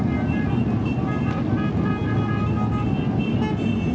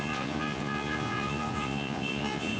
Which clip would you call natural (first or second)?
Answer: first